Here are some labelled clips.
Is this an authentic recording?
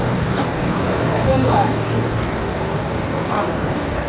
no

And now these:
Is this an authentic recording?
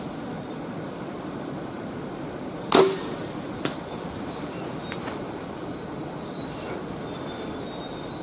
yes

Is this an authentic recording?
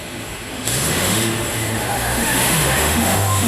no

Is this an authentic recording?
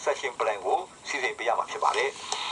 yes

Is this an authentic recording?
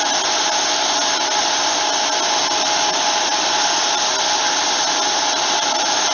yes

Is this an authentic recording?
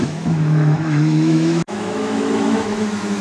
no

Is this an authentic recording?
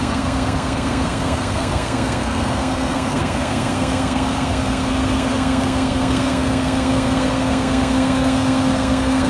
no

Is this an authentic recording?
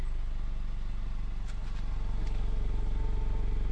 yes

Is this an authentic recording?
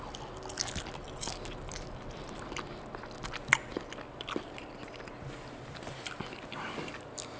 yes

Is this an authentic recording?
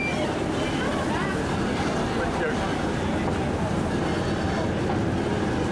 yes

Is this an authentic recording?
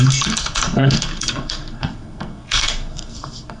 no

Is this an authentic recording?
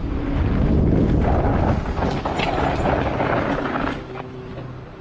yes